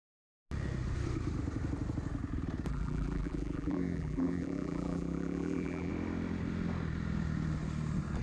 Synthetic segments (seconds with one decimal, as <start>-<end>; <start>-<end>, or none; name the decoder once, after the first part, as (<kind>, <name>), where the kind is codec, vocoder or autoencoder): 2.7-5.9 (vocoder, BigVGAN v2)